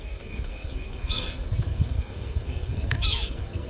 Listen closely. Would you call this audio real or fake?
fake